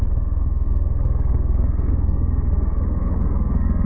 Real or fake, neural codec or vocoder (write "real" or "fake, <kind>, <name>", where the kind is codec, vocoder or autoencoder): fake, codec, SNAC